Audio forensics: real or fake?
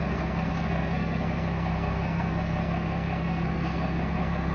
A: fake